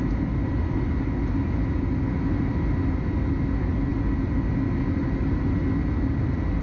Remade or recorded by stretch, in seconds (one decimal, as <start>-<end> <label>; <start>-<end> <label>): 0.0-5.0 recorded; 5.0-5.5 remade; 5.5-6.6 recorded